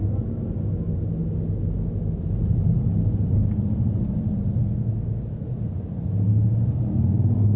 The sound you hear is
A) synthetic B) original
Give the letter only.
B